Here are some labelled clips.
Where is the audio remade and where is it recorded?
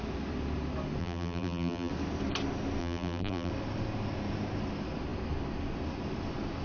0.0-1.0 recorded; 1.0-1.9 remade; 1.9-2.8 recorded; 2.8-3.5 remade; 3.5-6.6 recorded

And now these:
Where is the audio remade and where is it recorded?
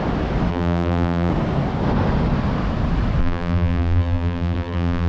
0.0-0.5 recorded; 0.5-1.3 remade; 1.3-3.2 recorded; 3.2-5.1 remade